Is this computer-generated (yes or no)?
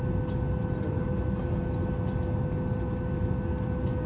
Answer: no